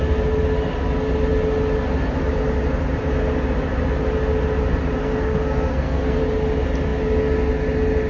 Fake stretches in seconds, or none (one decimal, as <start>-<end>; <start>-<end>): 5.0-6.2